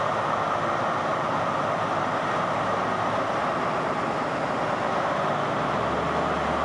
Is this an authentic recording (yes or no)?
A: yes